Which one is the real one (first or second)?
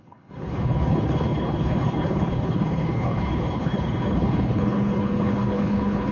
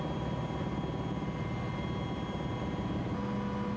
second